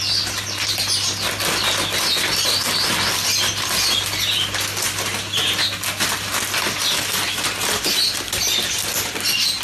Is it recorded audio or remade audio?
recorded